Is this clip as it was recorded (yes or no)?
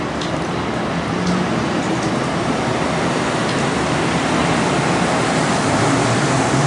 no